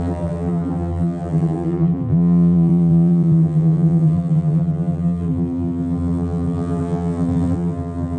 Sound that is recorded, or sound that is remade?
remade